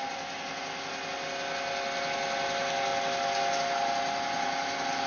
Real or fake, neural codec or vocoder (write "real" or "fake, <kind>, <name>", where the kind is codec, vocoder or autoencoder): real